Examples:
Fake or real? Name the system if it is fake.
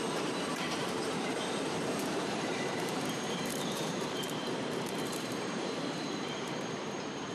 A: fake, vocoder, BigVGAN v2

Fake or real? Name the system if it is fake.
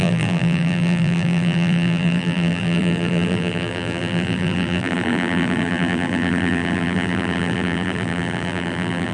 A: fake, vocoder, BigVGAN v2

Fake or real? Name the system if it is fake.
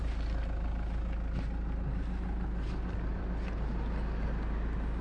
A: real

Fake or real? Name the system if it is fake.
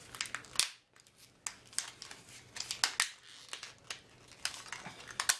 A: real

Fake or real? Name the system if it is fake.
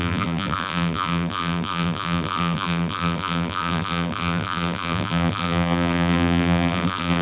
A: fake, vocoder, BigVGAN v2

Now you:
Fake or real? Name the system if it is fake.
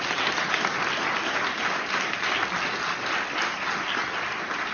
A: real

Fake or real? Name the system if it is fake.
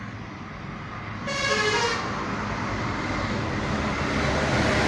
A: real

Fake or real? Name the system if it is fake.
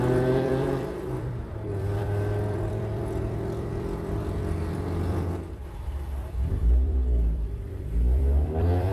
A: fake, vocoder, BigVGAN v2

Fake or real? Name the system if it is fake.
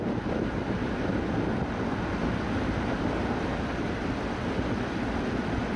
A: fake, vocoder, BigVGAN v2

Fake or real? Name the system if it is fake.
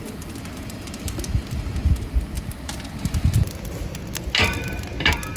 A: real